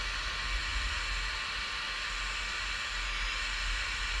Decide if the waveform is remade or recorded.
recorded